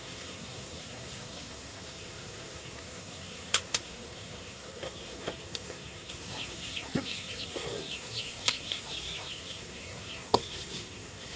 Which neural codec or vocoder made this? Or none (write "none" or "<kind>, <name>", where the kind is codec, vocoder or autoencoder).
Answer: codec, SNAC